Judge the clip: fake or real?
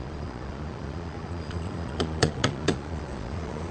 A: fake